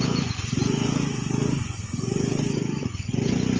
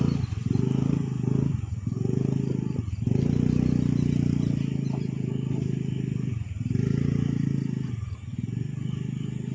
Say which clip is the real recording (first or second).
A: second